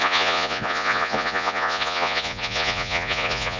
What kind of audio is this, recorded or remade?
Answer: remade